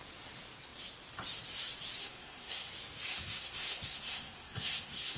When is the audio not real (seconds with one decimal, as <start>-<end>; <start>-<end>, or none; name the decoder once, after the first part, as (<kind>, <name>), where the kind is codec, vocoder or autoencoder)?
2.0-2.7 (codec, SNAC); 3.1-5.2